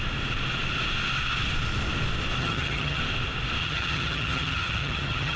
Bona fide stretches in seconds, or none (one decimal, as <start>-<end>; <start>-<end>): 0.0-2.4; 3.0-3.6